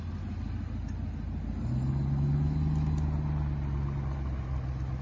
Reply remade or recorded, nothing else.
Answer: recorded